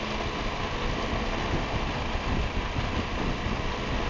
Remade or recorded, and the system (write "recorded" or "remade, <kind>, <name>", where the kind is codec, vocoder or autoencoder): recorded